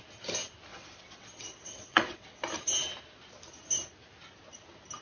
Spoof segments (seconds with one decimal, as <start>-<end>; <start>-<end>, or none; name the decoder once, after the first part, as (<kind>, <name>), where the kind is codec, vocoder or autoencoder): 0.7-2.4 (vocoder, WaveNeXt)